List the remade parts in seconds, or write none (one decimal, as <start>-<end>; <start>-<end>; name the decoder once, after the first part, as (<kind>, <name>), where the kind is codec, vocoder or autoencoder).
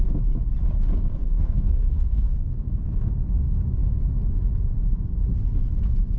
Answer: 1.2-3.1 (codec, SNAC)